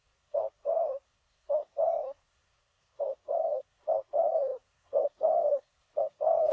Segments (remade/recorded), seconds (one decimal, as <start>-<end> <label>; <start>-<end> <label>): 0.0-6.5 remade